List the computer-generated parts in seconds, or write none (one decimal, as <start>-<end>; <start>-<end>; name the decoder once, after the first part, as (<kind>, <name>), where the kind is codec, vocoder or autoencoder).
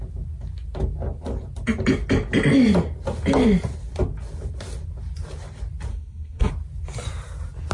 5.9-6.5 (codec, SNAC)